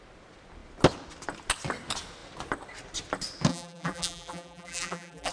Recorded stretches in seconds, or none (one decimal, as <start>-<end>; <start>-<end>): 0.0-3.5

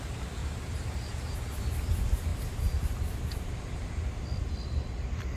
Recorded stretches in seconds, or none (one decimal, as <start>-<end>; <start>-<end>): 0.0-0.4; 1.4-2.3; 4.0-5.4

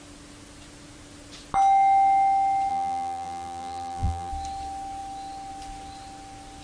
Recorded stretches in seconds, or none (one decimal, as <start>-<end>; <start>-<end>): 0.0-2.7; 4.3-6.6

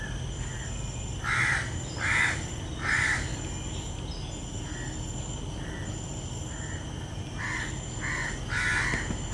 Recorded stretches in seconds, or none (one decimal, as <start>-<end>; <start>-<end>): 3.3-7.0; 8.2-9.3

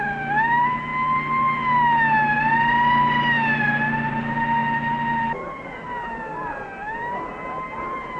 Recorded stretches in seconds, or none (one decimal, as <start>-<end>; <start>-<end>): 0.0-8.2

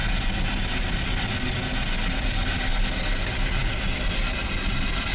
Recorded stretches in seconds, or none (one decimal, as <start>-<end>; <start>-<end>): 0.0-5.1

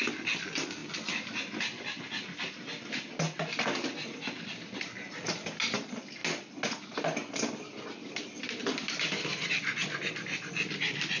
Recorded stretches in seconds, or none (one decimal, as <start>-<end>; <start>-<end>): 0.0-11.2